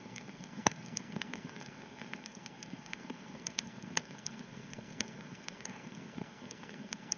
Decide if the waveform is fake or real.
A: fake